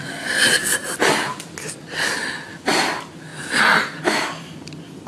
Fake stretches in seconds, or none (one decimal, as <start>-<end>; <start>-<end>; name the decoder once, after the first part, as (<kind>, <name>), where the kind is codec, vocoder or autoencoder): none